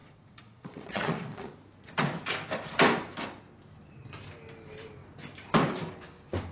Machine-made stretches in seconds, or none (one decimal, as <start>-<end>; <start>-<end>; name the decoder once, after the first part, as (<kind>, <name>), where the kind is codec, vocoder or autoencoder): 0.0-1.5 (vocoder, Vocos)